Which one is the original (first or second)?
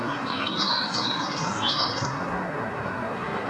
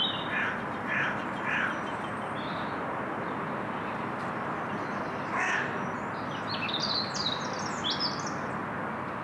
second